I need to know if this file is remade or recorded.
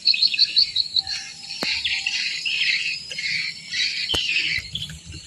remade